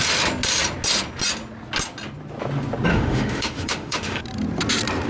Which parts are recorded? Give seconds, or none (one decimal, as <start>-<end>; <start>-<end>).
0.0-2.9; 4.2-5.1